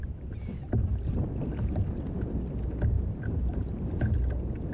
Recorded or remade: recorded